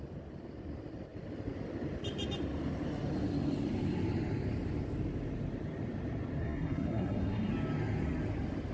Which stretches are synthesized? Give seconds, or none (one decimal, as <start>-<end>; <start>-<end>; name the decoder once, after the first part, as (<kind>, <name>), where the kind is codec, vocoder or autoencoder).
6.4-7.5 (codec, SNAC)

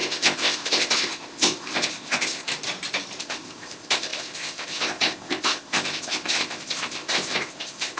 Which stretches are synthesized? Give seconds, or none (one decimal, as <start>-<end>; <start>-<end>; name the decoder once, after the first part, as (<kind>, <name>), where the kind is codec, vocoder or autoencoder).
0.0-2.5 (codec, ZipCodec); 3.2-8.0

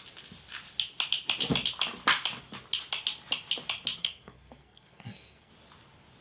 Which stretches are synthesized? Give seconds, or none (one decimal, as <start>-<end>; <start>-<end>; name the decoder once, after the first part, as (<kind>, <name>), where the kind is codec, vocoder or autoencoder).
4.0-5.5 (codec, SNAC)

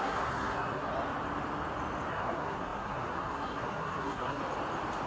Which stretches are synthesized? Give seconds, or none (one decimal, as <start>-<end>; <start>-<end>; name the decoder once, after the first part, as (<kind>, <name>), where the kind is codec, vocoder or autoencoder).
0.0-0.9 (codec, SNAC); 2.1-4.4

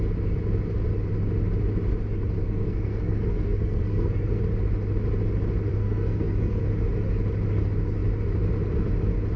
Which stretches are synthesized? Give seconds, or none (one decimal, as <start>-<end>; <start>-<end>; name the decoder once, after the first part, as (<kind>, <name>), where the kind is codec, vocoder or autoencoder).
2.4-4.4 (codec, SNAC); 5.7-6.6

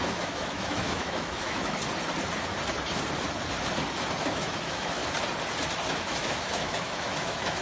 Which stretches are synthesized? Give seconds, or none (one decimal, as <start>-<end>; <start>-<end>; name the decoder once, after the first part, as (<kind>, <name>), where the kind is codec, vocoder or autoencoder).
0.0-1.8 (autoencoder, DAC-VAE); 4.2-5.0; 5.9-7.6

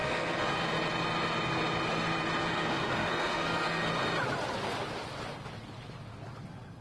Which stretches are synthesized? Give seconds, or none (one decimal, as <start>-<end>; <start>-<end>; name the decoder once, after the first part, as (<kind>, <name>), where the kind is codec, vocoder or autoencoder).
0.0-0.5 (codec, SNAC); 2.5-3.9

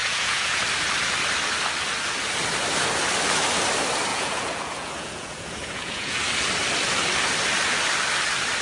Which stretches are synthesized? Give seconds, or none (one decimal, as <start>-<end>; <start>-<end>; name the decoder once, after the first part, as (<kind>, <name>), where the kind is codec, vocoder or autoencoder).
0.0-0.6 (vocoder, Vocos); 4.1-6.2